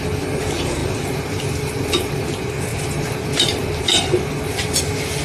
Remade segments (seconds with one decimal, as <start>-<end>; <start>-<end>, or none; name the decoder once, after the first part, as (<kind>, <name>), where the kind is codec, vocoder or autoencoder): none

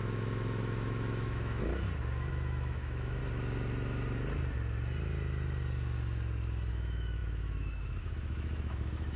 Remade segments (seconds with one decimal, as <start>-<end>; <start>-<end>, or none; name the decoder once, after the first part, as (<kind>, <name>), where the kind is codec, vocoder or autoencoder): 0.0-1.7 (autoencoder, DAC-VAE); 2.3-3.2; 6.7-9.2